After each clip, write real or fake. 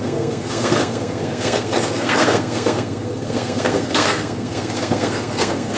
fake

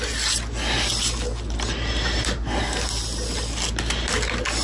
real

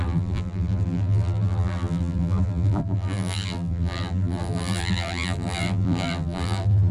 fake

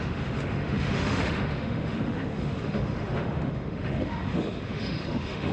fake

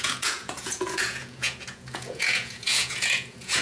fake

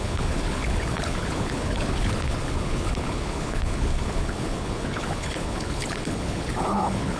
fake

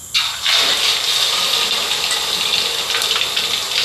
real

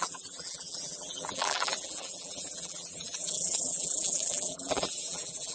fake